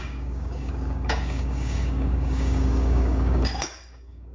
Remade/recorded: remade